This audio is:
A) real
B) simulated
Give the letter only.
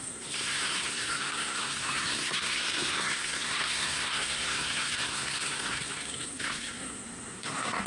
B